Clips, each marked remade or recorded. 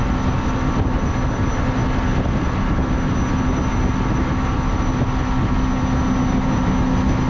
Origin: recorded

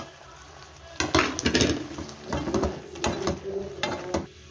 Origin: recorded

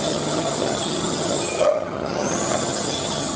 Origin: remade